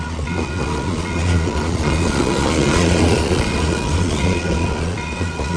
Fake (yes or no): yes